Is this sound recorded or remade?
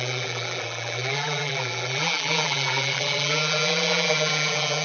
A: remade